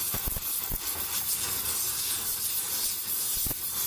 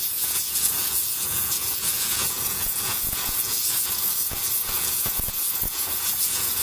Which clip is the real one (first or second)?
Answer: first